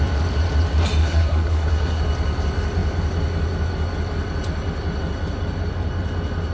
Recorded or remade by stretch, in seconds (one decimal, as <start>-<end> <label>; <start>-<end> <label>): 0.0-1.0 recorded; 1.0-2.0 remade; 2.0-6.5 recorded